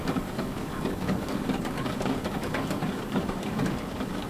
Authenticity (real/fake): fake